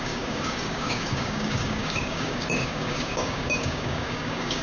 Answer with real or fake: fake